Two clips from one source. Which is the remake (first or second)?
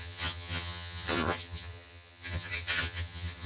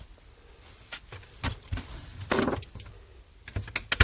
first